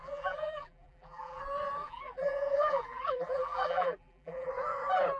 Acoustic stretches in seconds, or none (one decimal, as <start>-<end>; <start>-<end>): 1.4-1.8; 4.5-5.2